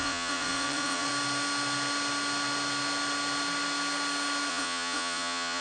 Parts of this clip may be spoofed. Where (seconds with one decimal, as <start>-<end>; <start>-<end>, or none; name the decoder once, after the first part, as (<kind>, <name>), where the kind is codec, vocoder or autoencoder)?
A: 0.0-1.1 (vocoder, Vocos); 4.5-5.6

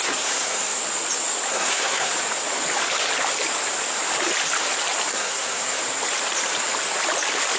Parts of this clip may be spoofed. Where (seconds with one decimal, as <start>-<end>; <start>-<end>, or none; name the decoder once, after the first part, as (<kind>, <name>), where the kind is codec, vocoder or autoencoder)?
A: 0.0-0.8 (codec, SNAC); 1.5-2.1; 5.1-5.8

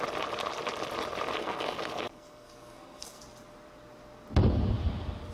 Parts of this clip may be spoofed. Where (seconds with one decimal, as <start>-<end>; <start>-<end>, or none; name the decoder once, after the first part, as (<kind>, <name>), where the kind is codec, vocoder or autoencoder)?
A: 1.4-3.2 (codec, SNAC)

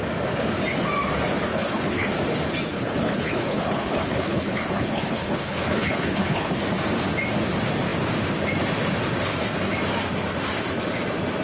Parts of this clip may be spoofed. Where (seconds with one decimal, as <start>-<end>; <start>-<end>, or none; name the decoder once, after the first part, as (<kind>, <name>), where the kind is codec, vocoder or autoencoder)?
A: 1.5-2.1 (codec, HILCodec); 2.7-6.5

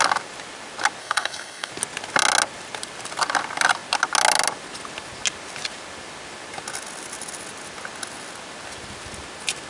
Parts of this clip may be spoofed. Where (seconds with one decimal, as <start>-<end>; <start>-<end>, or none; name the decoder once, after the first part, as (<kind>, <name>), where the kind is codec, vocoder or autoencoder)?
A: 1.0-1.7 (codec, SNAC)

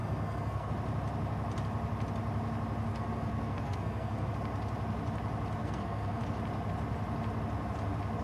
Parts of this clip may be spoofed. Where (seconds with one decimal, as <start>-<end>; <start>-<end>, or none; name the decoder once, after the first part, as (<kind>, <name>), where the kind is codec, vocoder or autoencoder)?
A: 0.0-0.7 (codec, SNAC); 2.9-4.3; 5.6-6.2

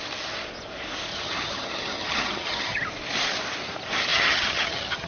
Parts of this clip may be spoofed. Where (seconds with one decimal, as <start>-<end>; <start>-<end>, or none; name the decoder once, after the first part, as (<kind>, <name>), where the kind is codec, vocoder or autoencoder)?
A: 1.1-2.8 (vocoder, HiFi-GAN); 4.1-5.1

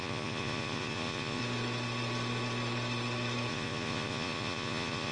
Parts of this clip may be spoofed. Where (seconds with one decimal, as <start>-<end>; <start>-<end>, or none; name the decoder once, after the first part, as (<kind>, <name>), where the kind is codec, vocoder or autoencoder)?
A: 0.0-1.4 (vocoder, Vocos); 3.5-5.1